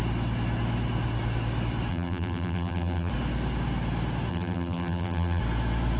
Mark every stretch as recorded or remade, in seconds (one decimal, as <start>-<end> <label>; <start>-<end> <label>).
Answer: 0.0-1.9 recorded; 1.9-3.1 remade; 3.1-4.3 recorded; 4.3-5.4 remade; 5.4-6.0 recorded